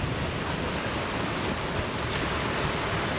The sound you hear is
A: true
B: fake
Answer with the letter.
A